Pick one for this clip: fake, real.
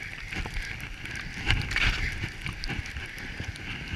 real